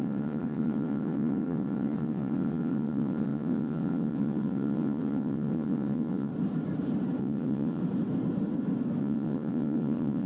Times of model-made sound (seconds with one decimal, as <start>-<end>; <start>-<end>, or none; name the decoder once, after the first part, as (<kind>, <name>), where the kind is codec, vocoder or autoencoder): 0.0-6.3 (vocoder, WaveNeXt); 7.2-7.8; 9.0-10.3